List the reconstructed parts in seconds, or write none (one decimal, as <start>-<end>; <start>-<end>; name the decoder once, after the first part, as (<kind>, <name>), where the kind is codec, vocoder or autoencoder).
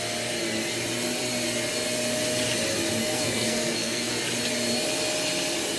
3.0-4.1 (codec, SNAC)